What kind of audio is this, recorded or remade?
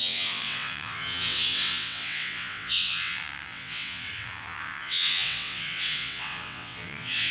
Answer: remade